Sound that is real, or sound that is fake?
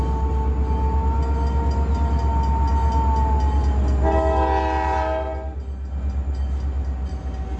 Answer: real